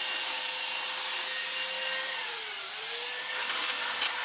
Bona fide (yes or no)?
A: yes